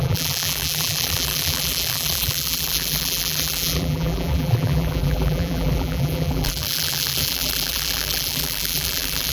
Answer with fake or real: fake